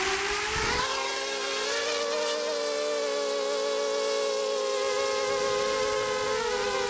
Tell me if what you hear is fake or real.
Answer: real